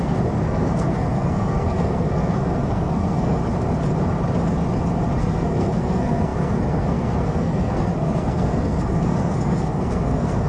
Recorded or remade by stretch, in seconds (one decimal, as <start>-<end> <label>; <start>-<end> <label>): 0.0-3.4 remade; 3.4-5.2 recorded; 5.2-10.5 remade